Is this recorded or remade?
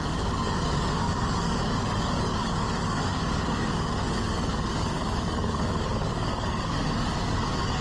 remade